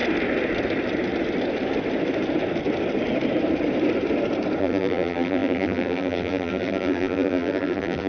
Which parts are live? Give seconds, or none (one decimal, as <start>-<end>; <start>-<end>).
0.0-4.6